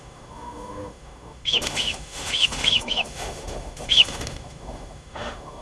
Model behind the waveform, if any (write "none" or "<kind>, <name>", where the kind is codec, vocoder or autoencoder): autoencoder, DAC-VAE